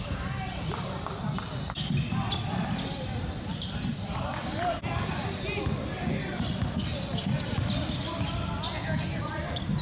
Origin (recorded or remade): recorded